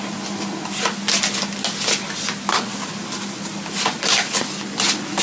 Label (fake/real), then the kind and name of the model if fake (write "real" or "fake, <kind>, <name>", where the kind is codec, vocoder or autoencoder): real